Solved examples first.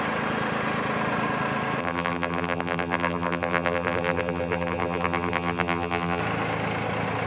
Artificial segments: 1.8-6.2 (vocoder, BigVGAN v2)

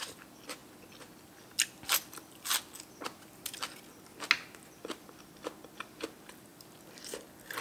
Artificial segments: none

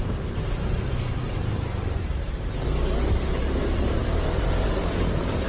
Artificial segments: 0.0-5.5 (vocoder, BigVGAN v2)

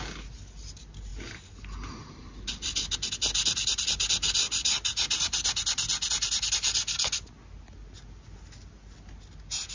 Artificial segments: none

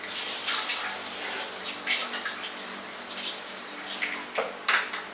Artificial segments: 2.0-5.1 (vocoder, BigVGAN v2)

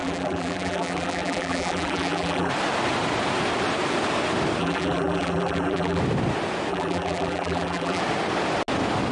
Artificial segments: 0.0-2.5 (vocoder, BigVGAN v2); 4.6-6.0; 6.7-8.0

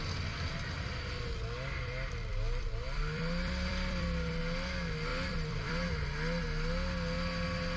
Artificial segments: 2.3-4.4 (vocoder, BigVGAN v2); 5.1-5.9

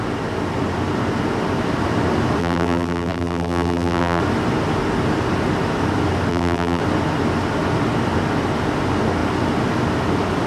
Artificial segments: 2.4-4.2 (vocoder, BigVGAN v2); 6.3-6.8